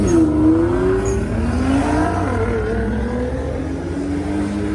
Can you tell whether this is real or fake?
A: real